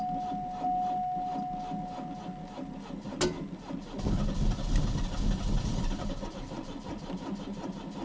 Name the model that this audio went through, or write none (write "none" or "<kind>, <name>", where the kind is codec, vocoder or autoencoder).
none